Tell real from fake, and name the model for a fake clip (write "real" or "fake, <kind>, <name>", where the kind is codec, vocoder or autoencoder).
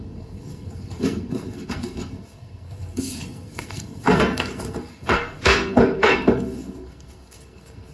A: fake, codec, SNAC